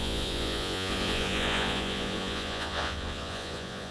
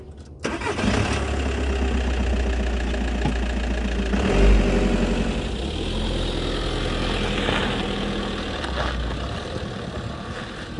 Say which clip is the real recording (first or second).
second